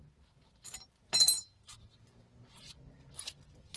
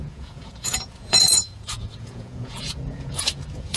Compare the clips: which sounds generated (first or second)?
second